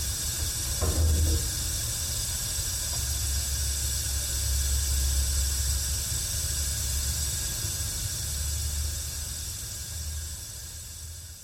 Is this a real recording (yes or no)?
yes